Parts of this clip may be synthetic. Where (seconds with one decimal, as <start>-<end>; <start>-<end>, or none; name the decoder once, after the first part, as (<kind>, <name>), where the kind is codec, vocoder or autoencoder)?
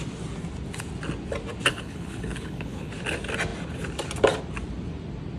1.7-2.9 (codec, HILCodec)